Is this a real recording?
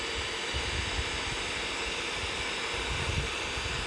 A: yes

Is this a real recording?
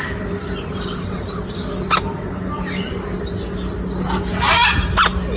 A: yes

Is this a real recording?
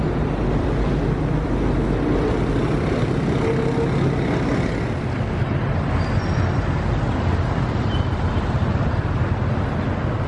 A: yes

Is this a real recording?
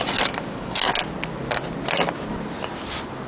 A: yes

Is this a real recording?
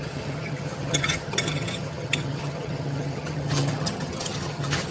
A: no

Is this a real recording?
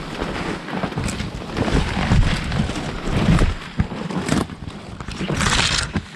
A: yes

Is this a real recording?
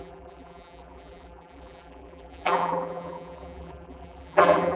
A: no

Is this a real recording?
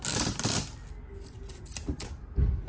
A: yes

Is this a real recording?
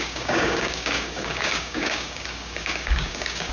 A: no